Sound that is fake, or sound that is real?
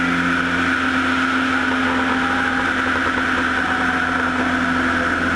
real